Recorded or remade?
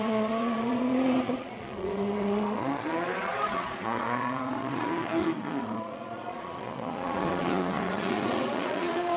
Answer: remade